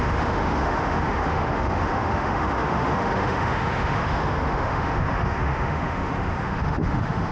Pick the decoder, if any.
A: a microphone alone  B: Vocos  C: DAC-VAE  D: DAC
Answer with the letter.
C